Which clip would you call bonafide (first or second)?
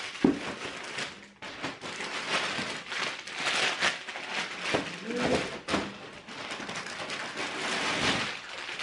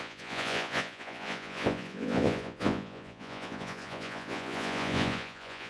first